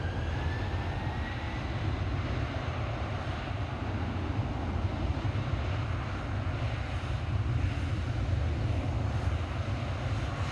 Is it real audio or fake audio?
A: real